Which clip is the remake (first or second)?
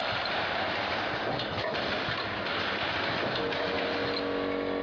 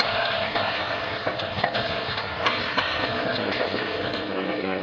second